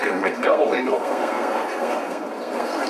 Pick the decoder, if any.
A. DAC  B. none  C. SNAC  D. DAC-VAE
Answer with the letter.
C